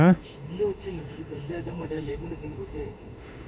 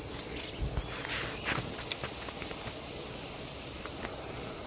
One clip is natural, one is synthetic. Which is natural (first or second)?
second